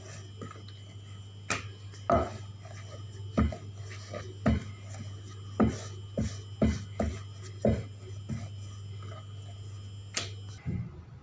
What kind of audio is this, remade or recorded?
recorded